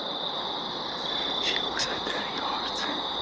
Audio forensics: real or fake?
real